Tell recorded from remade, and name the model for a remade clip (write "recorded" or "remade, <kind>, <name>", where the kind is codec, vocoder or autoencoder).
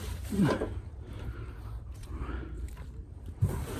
remade, vocoder, BigVGAN v2